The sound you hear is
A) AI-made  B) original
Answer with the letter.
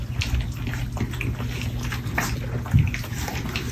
B